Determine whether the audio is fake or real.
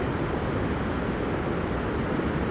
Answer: real